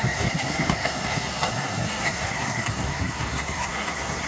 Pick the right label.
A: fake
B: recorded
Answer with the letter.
A